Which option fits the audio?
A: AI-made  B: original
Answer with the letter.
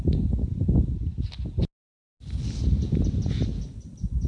B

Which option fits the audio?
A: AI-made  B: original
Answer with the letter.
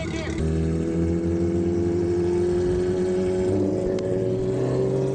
B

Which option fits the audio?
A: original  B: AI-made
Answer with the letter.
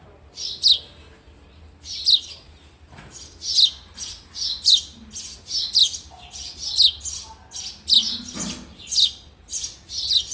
A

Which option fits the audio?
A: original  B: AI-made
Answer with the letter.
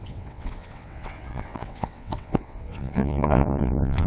B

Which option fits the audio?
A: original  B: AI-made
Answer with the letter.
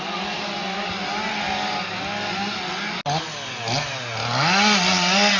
A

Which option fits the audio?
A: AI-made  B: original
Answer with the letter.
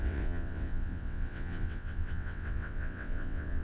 A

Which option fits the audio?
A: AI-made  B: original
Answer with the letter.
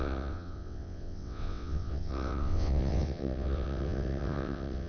A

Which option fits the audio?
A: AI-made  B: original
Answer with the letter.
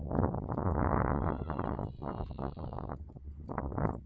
A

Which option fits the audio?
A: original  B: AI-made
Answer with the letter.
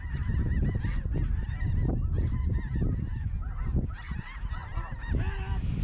A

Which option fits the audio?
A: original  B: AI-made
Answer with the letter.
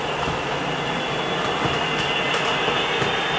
A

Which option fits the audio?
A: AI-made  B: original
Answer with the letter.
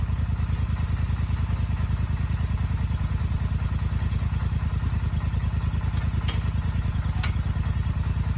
B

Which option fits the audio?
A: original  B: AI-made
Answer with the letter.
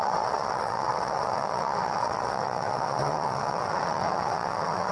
B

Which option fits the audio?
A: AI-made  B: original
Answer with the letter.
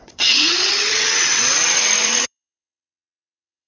A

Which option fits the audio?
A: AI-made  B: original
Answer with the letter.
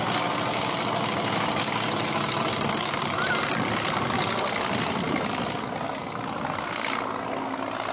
B